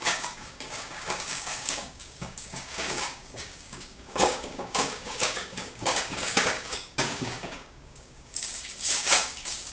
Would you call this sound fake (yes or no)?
yes